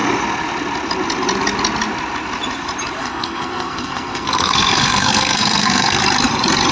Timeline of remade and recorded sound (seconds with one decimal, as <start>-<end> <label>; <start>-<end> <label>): 0.0-3.0 recorded; 3.0-6.0 remade; 6.0-6.7 recorded